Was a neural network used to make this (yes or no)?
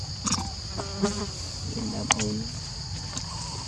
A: no